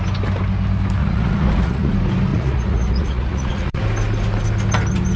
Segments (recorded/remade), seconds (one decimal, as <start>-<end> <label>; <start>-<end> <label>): 0.0-1.0 recorded; 1.0-1.9 remade; 1.9-2.3 recorded; 2.3-3.8 remade; 3.8-5.2 recorded